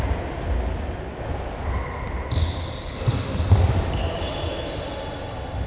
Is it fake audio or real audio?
real